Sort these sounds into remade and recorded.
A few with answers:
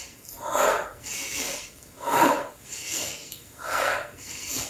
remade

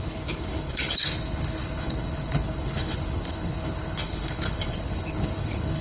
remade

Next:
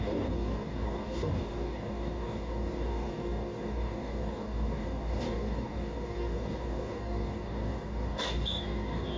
remade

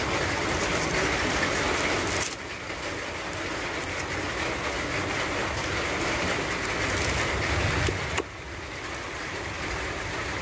recorded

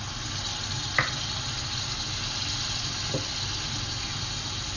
recorded